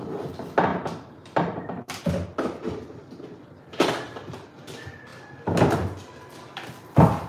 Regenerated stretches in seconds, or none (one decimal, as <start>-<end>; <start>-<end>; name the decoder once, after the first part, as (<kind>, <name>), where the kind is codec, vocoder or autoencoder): 0.7-2.0 (vocoder, BigVGAN v2)